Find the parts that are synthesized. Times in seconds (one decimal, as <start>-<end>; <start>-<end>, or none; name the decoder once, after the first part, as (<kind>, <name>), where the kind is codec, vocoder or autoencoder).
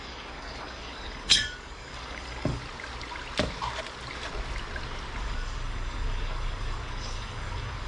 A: 0.0-2.6 (codec, DAC); 5.2-7.9